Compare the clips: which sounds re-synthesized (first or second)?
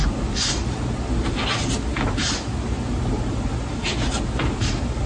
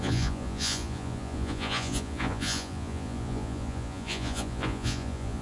second